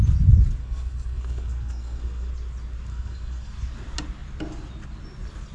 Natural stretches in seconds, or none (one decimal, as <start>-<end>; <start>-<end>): 0.0-0.6; 2.3-2.9; 3.5-5.5